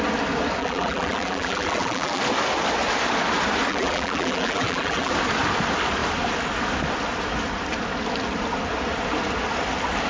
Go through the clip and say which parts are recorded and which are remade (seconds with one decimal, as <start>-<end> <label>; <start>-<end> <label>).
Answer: 0.0-0.6 recorded; 0.6-2.2 remade; 2.2-3.7 recorded; 3.7-5.1 remade; 5.1-10.1 recorded